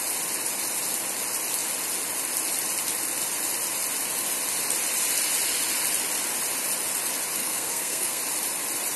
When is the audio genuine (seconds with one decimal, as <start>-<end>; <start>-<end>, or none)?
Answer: 0.0-7.4; 8.2-9.0